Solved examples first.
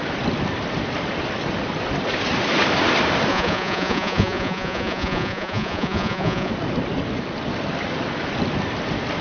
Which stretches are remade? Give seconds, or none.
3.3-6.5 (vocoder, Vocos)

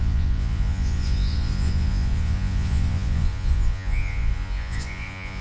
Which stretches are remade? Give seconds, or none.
0.0-5.4 (vocoder, Vocos)